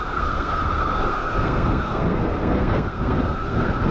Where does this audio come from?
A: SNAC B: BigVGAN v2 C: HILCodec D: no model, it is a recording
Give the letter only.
A